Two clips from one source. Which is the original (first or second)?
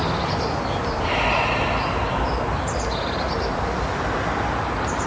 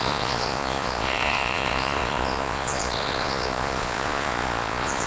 first